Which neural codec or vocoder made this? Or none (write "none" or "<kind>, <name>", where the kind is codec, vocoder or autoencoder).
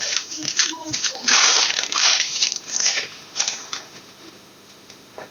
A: autoencoder, DAC-VAE